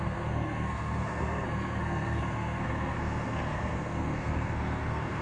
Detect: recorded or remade remade